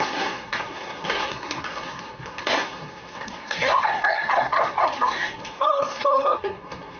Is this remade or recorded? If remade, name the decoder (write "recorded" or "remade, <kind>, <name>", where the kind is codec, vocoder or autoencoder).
remade, codec, SNAC